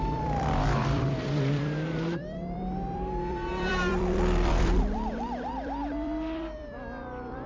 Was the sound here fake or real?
fake